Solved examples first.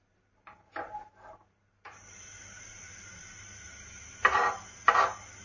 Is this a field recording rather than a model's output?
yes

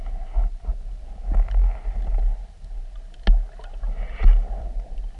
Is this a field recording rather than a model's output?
yes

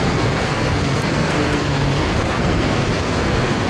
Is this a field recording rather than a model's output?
no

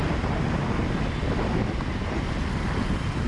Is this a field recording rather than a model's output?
yes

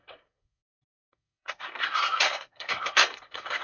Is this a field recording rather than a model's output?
no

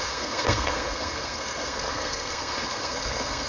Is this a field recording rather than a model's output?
no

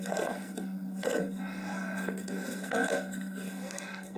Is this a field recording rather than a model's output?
no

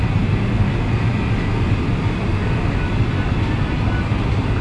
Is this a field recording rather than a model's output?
yes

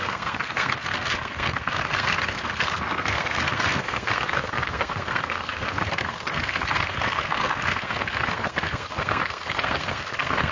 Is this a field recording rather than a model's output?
no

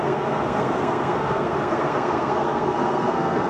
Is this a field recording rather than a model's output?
no